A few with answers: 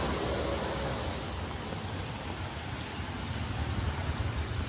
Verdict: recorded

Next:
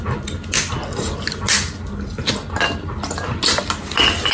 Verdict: recorded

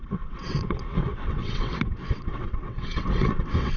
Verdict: remade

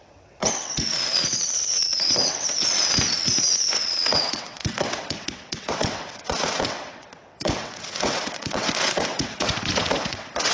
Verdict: remade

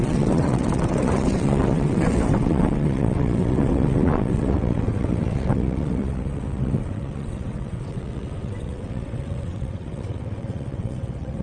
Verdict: remade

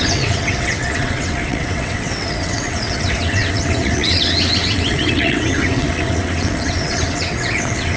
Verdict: remade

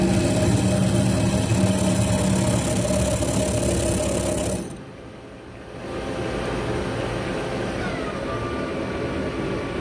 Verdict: recorded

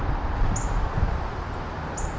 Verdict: recorded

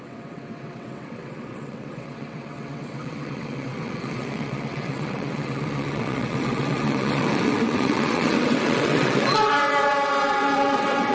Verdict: remade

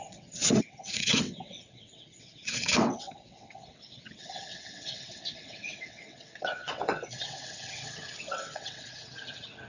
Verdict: remade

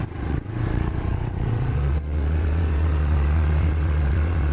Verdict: remade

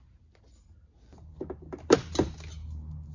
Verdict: recorded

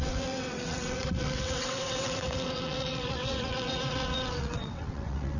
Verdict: remade